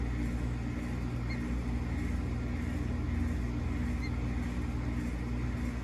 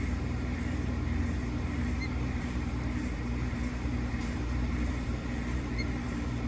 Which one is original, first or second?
first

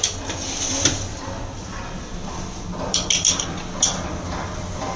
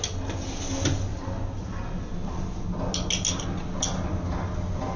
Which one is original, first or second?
second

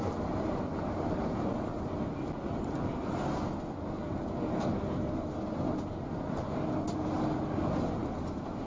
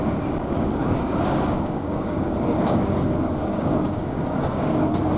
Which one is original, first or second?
first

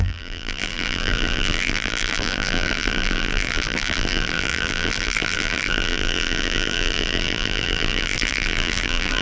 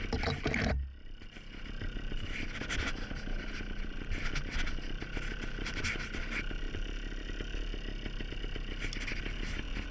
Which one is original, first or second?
second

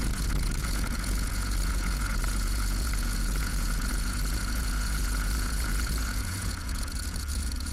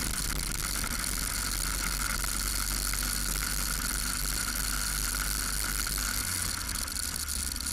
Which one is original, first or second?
second